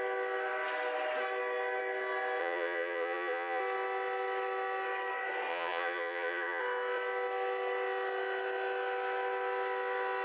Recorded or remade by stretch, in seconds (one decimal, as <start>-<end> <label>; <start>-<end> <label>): 0.0-2.4 recorded; 2.4-3.6 remade; 3.6-5.5 recorded; 5.5-6.6 remade; 6.6-10.2 recorded